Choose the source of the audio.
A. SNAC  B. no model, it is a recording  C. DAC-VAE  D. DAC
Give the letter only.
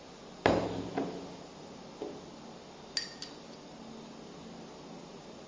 B